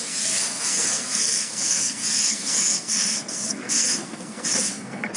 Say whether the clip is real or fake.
fake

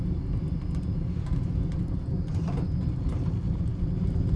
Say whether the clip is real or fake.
real